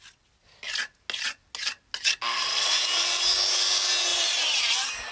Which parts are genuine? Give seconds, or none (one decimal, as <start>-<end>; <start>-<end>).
0.0-4.1